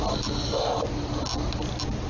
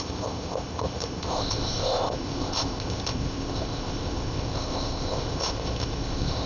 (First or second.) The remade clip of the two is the second